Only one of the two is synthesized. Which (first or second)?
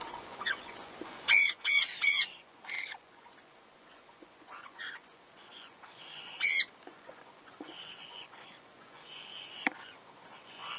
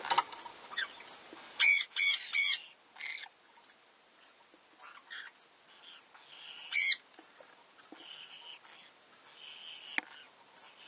first